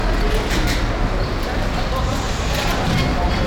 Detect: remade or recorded recorded